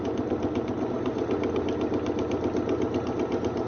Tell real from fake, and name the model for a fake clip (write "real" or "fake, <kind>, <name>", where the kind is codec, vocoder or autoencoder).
real